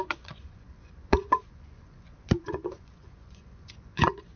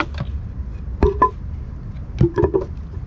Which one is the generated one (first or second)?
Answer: first